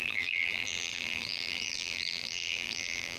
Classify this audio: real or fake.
fake